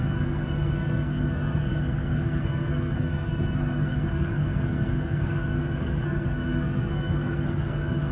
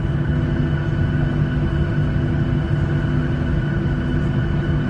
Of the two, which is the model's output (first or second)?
first